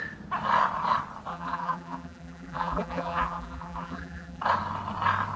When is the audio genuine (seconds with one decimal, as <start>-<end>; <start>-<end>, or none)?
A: 0.0-1.3; 4.4-5.4